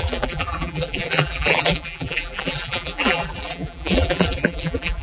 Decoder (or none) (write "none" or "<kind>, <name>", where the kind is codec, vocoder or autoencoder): vocoder, BigVGAN v2